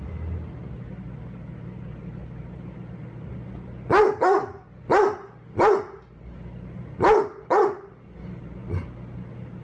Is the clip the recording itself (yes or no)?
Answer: yes